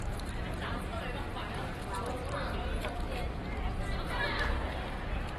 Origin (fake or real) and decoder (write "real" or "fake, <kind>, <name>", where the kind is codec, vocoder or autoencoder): fake, vocoder, BigVGAN v2